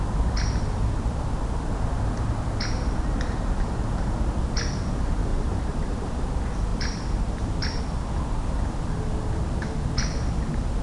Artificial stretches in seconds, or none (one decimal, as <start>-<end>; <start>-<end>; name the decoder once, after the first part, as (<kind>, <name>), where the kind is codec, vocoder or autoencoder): 5.3-6.3 (vocoder, BigVGAN v2); 6.7-7.8